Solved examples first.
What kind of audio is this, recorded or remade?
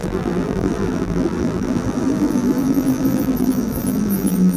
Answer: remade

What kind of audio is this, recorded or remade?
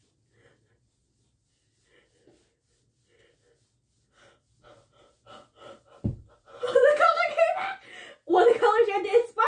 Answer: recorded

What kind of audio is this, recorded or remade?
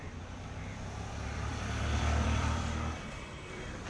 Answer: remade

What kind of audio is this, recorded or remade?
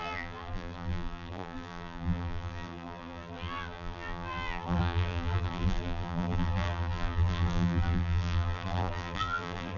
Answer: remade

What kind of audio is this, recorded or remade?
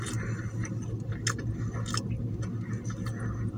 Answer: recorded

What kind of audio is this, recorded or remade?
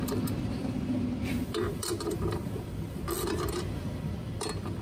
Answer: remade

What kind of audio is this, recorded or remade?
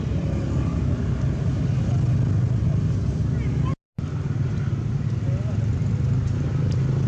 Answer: recorded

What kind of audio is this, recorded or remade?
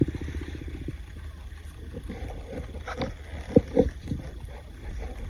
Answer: recorded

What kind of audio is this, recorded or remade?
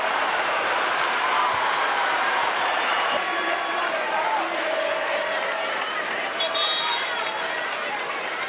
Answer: remade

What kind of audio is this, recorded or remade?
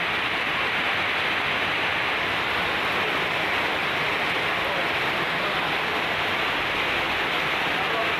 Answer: remade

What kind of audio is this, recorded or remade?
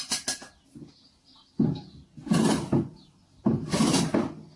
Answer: recorded